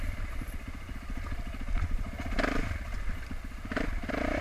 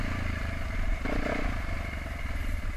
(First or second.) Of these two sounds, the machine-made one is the first